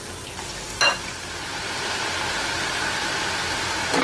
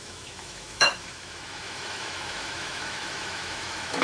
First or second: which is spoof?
second